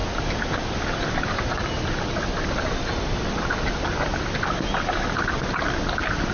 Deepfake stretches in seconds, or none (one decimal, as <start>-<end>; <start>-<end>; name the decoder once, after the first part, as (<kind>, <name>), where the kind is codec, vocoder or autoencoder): none